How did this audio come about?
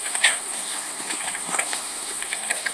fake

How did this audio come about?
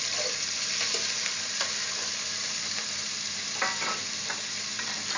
fake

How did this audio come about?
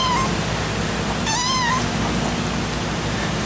real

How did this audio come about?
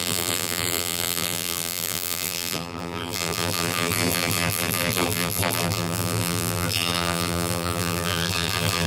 fake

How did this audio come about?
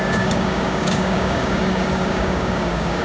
fake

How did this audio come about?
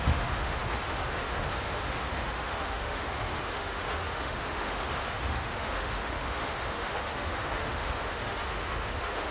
fake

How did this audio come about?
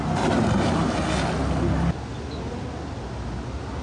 real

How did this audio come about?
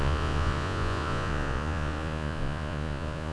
fake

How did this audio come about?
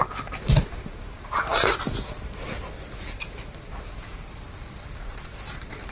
real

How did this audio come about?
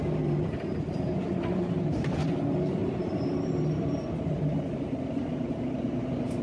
fake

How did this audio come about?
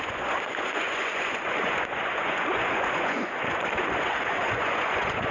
fake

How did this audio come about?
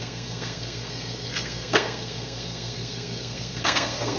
fake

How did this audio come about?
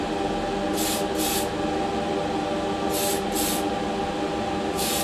real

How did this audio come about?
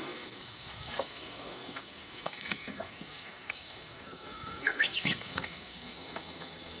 fake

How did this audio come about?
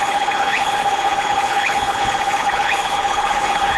fake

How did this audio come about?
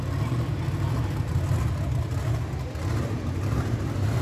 real